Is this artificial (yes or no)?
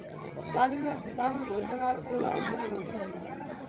yes